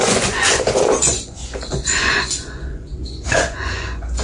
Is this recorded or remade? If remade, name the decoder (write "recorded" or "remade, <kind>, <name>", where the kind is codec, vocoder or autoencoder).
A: remade, vocoder, Vocos